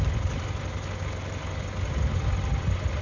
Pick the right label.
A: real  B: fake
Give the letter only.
A